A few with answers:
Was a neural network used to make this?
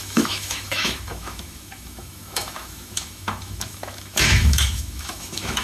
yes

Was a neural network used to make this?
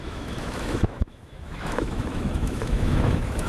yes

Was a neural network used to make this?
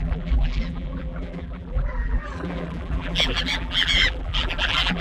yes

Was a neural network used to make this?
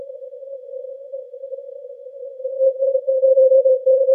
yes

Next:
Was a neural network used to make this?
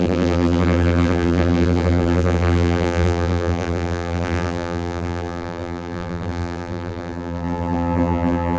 yes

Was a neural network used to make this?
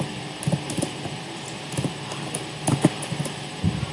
no